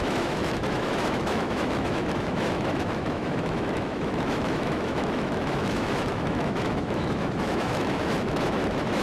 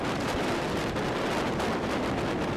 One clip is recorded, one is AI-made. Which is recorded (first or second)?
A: second